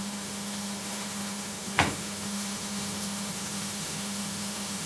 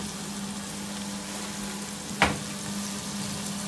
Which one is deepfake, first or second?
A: first